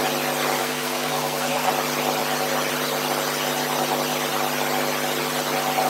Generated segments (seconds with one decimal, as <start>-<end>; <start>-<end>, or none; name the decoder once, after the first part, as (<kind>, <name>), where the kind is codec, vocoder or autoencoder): 0.6-1.7 (codec, SNAC)